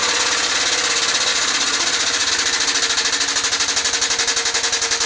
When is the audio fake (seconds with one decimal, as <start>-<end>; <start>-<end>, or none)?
0.0-0.6; 1.3-2.3